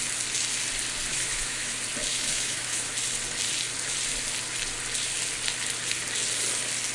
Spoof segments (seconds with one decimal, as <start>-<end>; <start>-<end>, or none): 1.1-1.7; 2.1-2.9